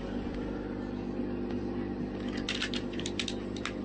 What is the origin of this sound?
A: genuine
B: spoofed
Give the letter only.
A